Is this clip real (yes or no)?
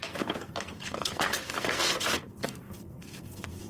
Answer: no